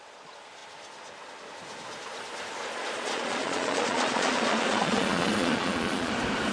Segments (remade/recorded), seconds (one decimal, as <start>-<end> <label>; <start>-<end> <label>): 0.0-2.7 recorded; 2.7-6.1 remade; 6.1-6.5 recorded